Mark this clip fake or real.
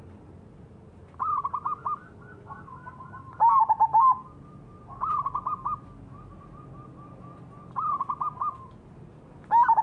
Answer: real